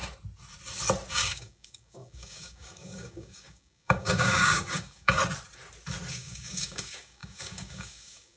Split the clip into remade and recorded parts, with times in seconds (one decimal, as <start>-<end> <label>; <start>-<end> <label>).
0.0-1.1 recorded; 1.1-5.2 remade; 5.2-6.1 recorded; 6.1-8.4 remade